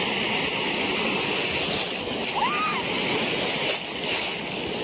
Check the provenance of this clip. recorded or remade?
recorded